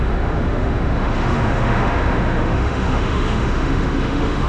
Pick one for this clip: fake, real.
fake